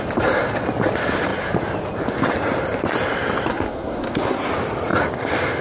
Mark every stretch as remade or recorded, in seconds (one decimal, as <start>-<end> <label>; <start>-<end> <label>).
0.0-3.5 recorded; 3.5-4.5 remade; 4.5-5.6 recorded